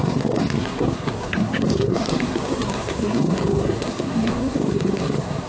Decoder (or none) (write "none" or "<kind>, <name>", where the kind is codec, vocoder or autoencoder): codec, SNAC